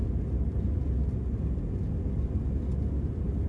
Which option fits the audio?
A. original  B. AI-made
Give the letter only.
A